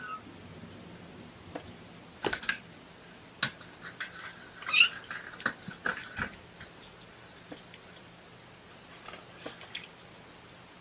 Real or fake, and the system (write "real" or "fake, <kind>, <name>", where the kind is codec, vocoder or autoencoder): real